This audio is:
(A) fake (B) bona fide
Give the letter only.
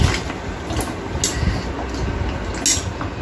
B